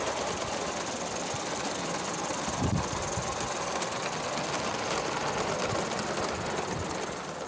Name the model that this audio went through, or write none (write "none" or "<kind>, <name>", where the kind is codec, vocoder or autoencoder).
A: none